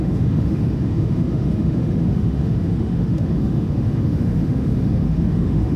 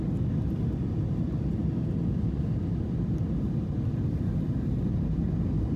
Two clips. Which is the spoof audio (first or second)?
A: first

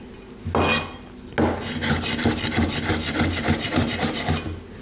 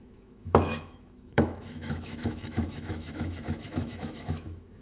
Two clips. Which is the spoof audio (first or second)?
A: second